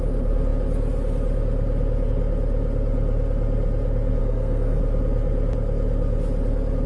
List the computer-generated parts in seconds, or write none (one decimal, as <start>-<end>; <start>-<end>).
4.2-4.8